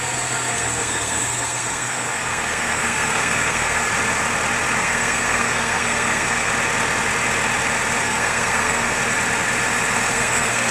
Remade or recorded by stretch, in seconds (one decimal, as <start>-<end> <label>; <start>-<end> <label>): 0.0-3.9 remade; 3.9-4.8 recorded; 4.8-6.5 remade; 6.5-8.0 recorded; 8.0-9.0 remade; 9.0-10.1 recorded; 10.1-10.7 remade